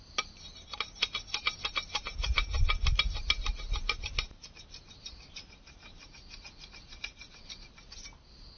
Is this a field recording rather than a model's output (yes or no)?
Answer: yes